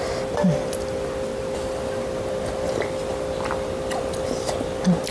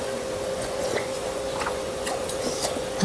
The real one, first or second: first